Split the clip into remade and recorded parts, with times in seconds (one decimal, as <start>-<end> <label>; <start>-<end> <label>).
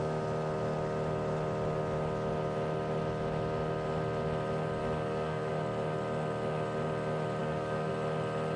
0.0-4.8 recorded; 4.8-5.5 remade; 5.5-7.4 recorded; 7.4-7.9 remade; 7.9-8.6 recorded